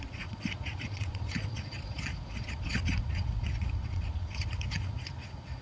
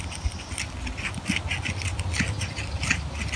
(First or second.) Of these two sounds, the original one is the second